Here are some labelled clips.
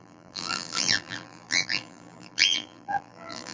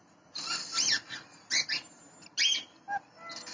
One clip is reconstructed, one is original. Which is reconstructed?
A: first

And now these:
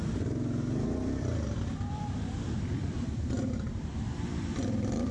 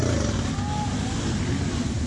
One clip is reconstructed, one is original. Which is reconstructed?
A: first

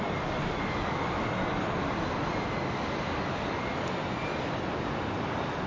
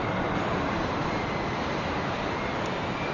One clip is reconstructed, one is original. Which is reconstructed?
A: second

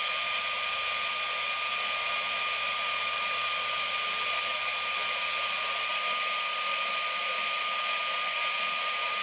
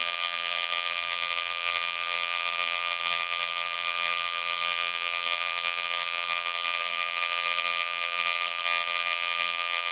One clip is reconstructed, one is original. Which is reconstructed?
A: second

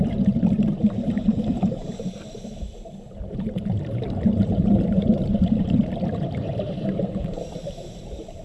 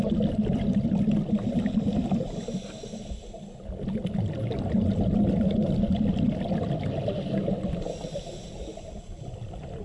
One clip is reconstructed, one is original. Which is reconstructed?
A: first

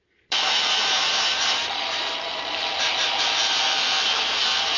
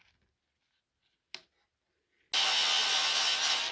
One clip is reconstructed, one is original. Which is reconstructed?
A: first